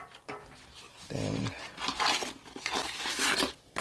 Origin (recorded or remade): recorded